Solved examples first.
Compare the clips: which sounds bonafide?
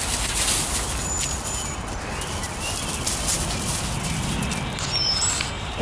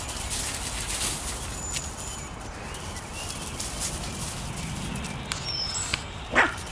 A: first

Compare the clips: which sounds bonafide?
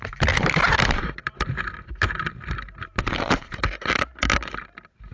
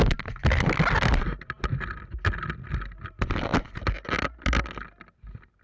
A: second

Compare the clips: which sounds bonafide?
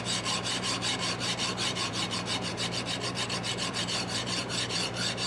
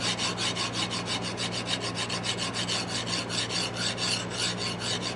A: second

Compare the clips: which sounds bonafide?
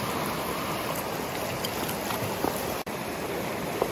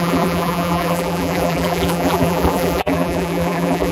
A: first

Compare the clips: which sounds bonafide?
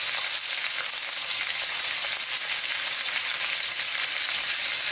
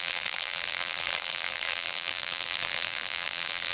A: first